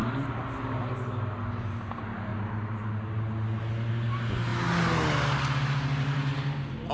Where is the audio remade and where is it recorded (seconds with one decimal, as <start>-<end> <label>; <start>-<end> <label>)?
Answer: 0.0-6.9 recorded